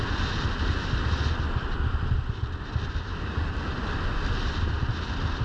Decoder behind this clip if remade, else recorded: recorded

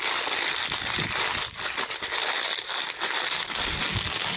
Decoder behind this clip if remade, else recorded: recorded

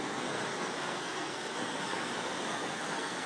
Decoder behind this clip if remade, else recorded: remade, codec, SNAC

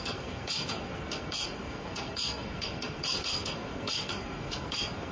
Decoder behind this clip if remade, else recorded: remade, codec, SNAC